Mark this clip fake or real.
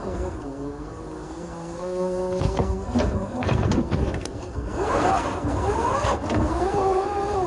fake